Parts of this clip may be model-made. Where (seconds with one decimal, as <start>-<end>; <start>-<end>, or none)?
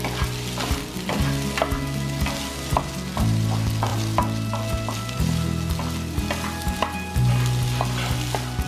none